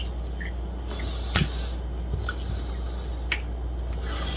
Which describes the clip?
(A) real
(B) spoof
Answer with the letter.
A